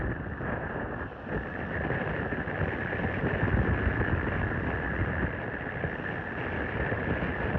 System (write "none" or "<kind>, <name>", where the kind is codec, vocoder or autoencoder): none